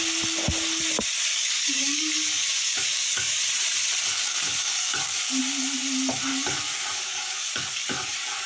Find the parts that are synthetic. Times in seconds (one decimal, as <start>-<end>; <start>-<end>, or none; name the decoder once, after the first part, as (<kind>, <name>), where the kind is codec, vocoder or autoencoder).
1.3-3.4 (codec, DAC); 4.1-5.4; 6.3-8.5